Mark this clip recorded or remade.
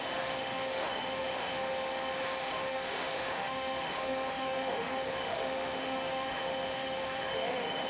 remade